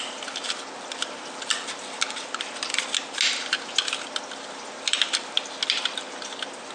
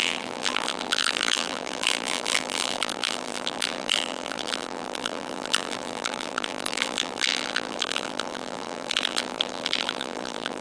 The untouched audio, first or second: first